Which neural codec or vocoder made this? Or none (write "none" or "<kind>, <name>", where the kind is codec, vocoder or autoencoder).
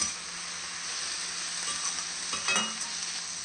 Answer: none